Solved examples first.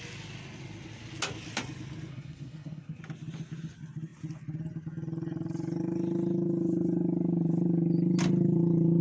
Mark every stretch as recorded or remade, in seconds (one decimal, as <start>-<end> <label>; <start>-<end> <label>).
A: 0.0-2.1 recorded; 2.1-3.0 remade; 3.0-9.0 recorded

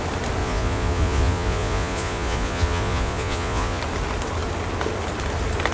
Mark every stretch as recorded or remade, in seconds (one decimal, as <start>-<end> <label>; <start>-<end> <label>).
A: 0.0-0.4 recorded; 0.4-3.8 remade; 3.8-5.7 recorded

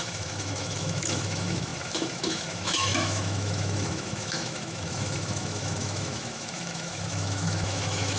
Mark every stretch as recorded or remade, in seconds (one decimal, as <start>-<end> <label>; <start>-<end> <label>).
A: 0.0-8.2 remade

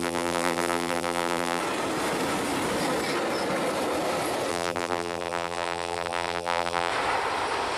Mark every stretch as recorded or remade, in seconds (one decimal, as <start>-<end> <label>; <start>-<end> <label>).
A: 0.0-1.6 remade; 1.6-4.5 recorded; 4.5-6.9 remade; 6.9-7.8 recorded